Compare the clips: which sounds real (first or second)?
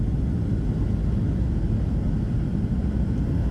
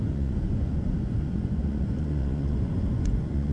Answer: first